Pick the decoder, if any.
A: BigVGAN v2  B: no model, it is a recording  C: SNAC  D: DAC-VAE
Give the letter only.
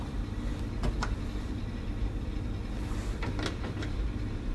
B